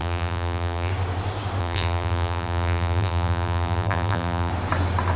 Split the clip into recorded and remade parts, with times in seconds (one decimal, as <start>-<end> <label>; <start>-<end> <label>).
0.0-0.9 remade; 0.9-1.6 recorded; 1.6-4.5 remade; 4.5-5.2 recorded